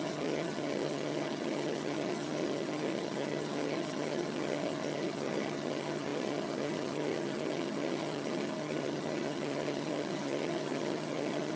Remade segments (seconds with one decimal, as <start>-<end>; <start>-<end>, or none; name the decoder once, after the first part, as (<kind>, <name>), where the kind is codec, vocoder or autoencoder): 0.0-11.6 (vocoder, HiFi-GAN)